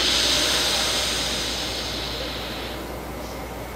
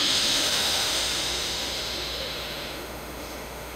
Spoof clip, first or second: second